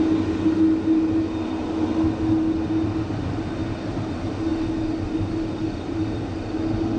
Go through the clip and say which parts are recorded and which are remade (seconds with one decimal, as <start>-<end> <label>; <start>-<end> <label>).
0.0-7.0 recorded